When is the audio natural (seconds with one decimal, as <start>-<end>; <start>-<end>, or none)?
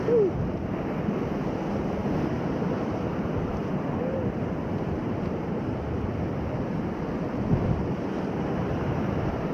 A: 0.0-9.5